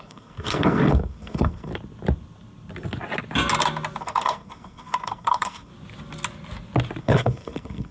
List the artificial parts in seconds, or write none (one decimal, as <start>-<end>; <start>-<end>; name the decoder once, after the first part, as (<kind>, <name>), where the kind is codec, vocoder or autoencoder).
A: 0.0-1.7 (codec, SNAC); 4.0-5.7; 7.0-7.9